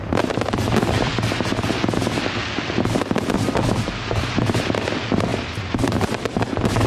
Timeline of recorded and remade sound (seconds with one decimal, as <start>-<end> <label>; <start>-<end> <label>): 0.0-5.3 recorded; 5.3-6.4 remade; 6.4-6.9 recorded